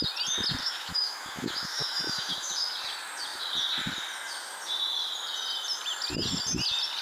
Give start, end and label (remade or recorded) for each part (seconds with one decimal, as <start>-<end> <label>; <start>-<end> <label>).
0.0-0.6 recorded; 0.6-2.5 remade; 2.5-7.0 recorded